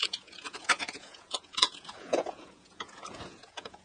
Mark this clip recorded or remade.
remade